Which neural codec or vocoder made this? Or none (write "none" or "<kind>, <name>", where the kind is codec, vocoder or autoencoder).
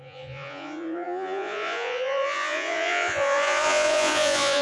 vocoder, Vocos